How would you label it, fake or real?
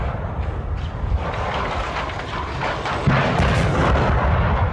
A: real